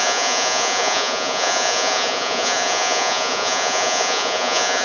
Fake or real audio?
fake